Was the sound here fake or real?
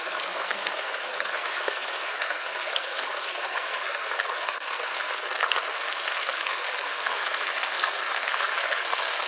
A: fake